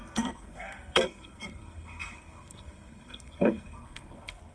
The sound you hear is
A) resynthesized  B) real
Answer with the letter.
A